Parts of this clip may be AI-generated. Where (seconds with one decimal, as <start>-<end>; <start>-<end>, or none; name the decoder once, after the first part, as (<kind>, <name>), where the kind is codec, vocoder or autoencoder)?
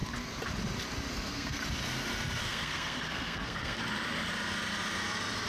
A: 1.1-1.6 (codec, SNAC); 2.4-3.8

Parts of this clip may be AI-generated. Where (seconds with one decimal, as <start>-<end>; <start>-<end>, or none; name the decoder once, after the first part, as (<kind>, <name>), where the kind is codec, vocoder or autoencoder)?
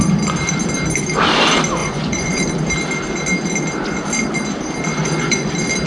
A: 1.8-2.4 (vocoder, Vocos); 4.9-5.5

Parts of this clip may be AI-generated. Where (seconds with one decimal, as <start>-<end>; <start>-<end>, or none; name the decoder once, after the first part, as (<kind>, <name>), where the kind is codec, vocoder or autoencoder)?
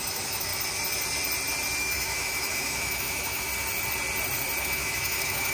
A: 0.0-0.5 (autoencoder, DAC-VAE); 1.8-3.5; 4.6-5.5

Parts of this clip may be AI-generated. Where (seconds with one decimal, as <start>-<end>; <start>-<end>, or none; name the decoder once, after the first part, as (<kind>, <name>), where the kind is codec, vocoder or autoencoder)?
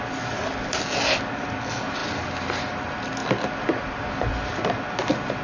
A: none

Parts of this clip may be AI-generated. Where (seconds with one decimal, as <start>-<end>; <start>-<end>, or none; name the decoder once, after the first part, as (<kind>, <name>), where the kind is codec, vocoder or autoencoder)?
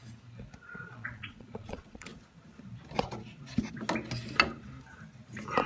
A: 0.9-2.1 (vocoder, Vocos)